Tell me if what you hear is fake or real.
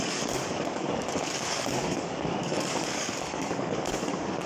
fake